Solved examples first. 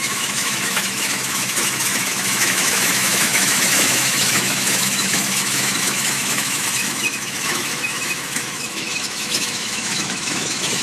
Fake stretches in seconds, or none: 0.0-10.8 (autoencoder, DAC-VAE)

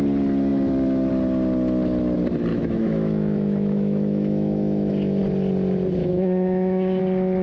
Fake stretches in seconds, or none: 2.5-5.2 (autoencoder, DAC-VAE); 6.0-7.0

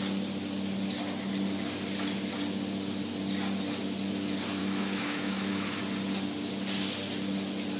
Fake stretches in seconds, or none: 4.6-5.8 (autoencoder, DAC-VAE)

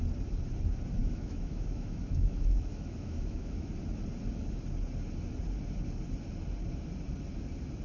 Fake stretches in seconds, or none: 1.0-3.7 (autoencoder, DAC-VAE)

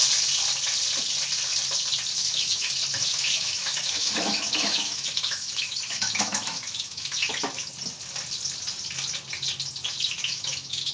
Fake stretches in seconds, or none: 2.2-2.7 (autoencoder, DAC-VAE); 3.1-7.7; 9.8-10.9

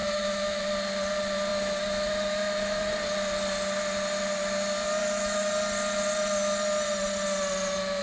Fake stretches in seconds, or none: 0.0-0.6 (autoencoder, DAC-VAE); 1.5-2.8; 5.0-5.5

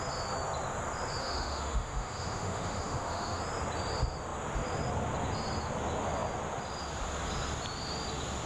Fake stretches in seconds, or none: 1.2-3.4 (autoencoder, DAC-VAE)